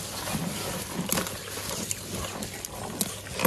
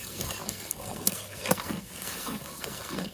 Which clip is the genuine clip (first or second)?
first